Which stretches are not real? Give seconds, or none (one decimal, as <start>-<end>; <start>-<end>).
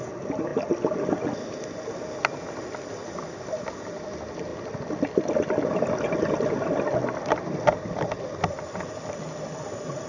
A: none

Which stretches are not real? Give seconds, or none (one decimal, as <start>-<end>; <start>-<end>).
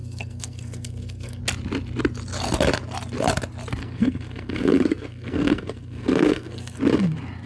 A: 0.0-1.4; 3.8-6.8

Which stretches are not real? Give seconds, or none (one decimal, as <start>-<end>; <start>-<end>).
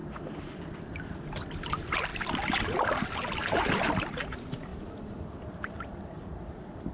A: 0.0-2.1; 3.7-6.9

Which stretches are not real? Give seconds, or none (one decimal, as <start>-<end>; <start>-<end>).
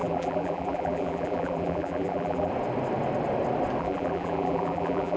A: 0.0-2.5; 3.8-5.2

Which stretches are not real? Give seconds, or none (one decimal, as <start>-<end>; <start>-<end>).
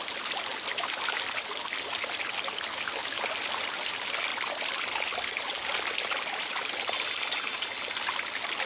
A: 0.5-1.7; 4.3-6.5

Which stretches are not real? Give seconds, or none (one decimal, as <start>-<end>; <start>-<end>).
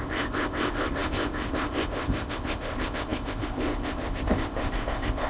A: 0.0-5.3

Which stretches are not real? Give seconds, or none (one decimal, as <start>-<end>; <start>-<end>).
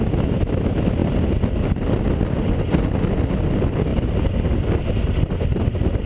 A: none